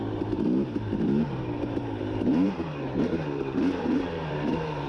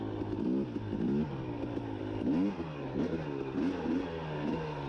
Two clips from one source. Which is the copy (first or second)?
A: first